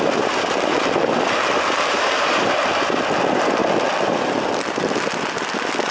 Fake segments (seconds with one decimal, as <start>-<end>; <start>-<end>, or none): none